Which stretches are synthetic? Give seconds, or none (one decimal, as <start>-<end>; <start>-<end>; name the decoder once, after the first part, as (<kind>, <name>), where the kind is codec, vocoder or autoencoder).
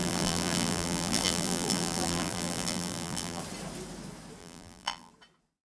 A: 0.0-3.4 (vocoder, BigVGAN v2); 4.4-5.1